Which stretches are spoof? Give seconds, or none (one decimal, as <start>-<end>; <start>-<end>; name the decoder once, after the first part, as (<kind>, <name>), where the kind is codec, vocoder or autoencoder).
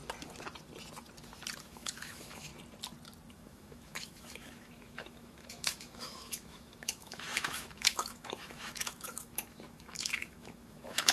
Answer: 1.6-2.5 (autoencoder, DAC-VAE); 3.3-11.1